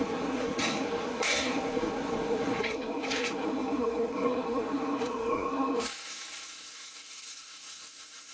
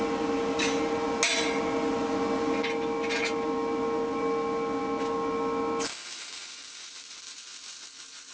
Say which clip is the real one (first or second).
second